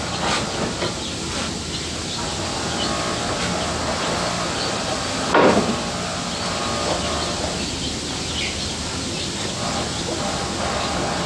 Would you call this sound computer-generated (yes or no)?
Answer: no